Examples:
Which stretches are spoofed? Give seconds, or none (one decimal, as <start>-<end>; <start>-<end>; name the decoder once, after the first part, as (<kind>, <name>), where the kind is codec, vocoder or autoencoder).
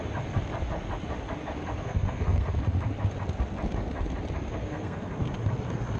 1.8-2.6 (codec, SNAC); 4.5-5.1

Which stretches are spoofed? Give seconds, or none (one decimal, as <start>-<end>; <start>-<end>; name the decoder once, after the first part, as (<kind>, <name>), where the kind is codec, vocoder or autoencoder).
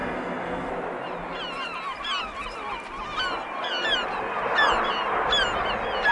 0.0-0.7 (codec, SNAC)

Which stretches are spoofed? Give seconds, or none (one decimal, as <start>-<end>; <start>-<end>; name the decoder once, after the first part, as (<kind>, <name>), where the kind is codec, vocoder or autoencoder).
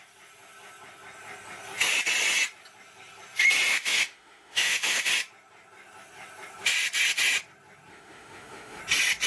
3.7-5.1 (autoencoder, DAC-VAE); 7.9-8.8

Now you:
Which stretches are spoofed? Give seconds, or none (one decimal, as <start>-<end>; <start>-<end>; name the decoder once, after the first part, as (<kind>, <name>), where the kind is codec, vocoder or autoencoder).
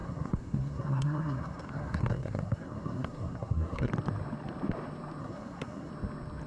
0.0-3.9 (codec, SNAC); 5.2-5.9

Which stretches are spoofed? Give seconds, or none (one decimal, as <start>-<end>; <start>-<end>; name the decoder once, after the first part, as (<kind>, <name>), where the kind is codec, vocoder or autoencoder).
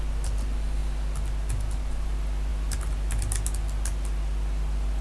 none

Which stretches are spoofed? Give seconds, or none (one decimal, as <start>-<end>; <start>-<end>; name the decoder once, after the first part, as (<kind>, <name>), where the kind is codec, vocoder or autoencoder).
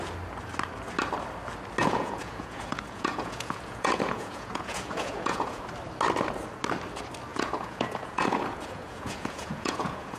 1.8-5.6 (vocoder, Vocos); 7.3-10.2